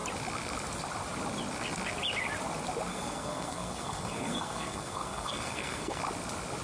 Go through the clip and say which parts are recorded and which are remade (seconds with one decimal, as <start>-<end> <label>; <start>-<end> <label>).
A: 0.0-2.9 recorded; 2.9-6.0 remade; 6.0-6.6 recorded